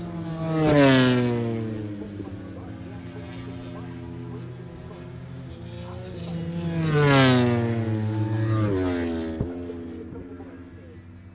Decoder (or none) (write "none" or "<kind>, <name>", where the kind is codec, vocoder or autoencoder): none